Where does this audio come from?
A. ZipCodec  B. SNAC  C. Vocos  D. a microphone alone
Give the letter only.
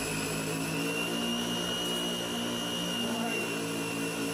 D